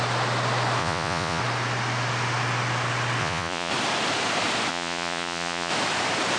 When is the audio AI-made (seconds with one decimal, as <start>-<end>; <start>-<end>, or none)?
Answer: 0.8-1.4; 3.2-3.7; 4.7-5.7